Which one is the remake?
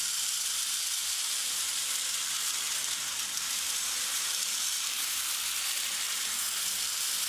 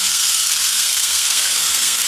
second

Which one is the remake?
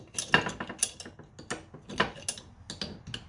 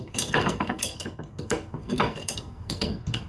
second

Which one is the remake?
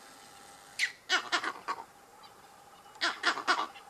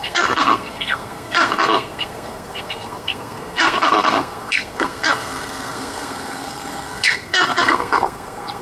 second